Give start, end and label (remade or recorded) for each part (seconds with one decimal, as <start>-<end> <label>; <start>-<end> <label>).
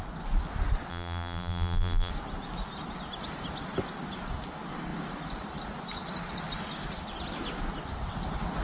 0.0-0.9 recorded; 0.9-2.1 remade; 2.1-8.6 recorded